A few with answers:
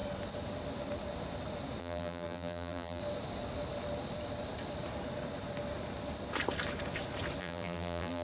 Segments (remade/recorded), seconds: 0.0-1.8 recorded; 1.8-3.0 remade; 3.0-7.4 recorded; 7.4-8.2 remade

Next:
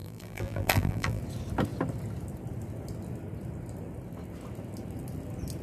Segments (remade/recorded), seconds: 0.0-1.2 remade; 1.2-5.6 recorded

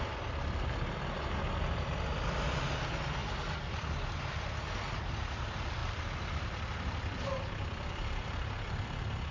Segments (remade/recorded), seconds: 0.0-3.2 recorded; 3.2-3.9 remade; 3.9-5.8 recorded; 5.8-9.3 remade